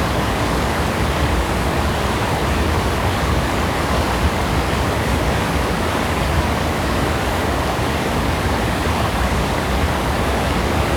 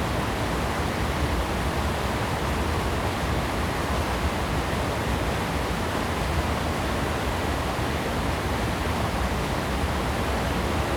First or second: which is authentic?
second